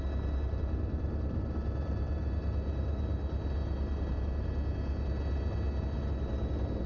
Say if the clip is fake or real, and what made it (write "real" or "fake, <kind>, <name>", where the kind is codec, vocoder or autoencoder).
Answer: real